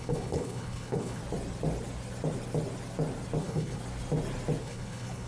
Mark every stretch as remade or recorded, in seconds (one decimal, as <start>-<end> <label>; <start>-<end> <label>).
0.0-1.2 remade; 1.2-3.4 recorded; 3.4-3.8 remade; 3.8-4.6 recorded; 4.6-5.3 remade

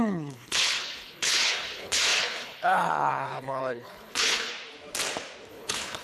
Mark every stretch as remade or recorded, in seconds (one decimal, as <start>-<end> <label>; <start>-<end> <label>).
0.0-4.5 remade; 4.5-5.5 recorded; 5.5-6.0 remade